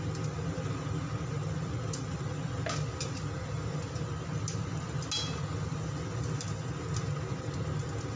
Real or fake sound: real